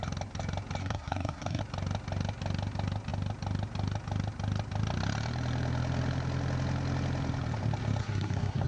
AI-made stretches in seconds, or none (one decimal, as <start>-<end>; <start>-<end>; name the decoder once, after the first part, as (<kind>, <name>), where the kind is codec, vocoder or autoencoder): 0.8-1.6 (codec, SNAC); 8.0-8.7